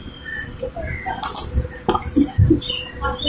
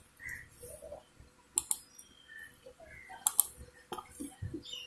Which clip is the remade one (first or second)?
first